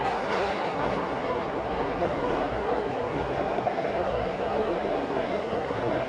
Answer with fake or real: fake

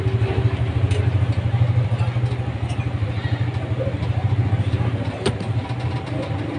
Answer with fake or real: real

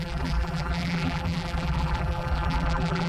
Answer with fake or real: fake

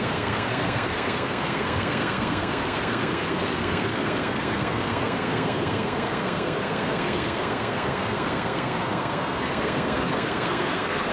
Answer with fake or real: fake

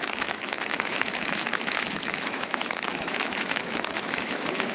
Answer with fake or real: fake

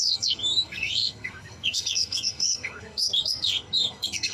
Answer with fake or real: fake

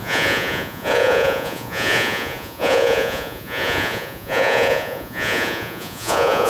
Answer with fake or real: fake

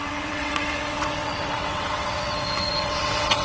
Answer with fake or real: fake